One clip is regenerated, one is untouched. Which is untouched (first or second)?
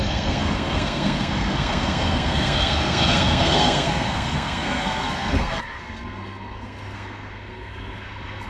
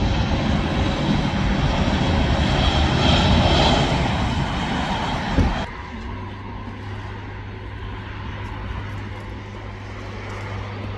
second